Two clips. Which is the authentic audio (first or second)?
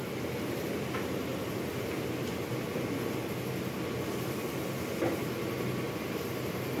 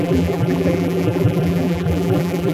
first